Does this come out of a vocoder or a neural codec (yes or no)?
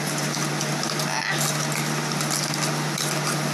no